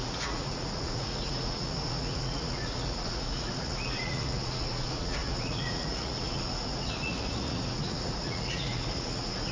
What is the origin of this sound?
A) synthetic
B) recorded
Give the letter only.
A